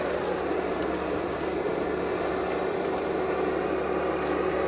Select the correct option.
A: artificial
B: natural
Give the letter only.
B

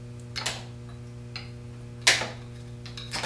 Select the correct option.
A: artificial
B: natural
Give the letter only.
B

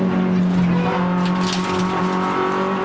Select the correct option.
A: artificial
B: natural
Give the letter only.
B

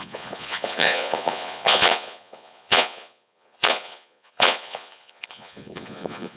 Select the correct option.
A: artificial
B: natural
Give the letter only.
A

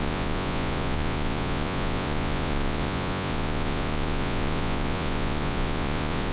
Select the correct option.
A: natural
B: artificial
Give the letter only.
B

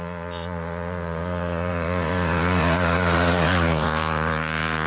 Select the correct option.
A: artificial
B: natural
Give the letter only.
A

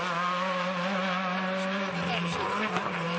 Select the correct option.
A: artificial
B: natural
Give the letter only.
B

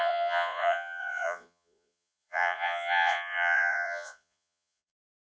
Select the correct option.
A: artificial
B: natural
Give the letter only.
A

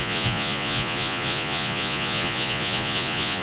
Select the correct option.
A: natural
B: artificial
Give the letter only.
B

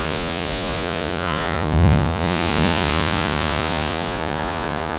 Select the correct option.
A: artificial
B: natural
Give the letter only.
A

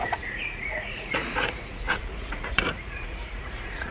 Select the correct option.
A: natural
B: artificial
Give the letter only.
B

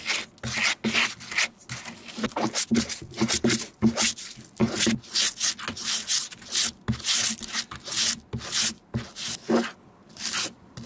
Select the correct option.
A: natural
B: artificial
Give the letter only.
A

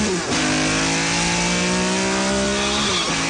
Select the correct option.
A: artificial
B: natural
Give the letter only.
B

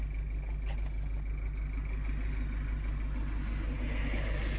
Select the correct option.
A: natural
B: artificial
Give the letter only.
A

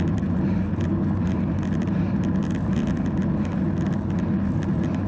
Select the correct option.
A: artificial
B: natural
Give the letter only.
B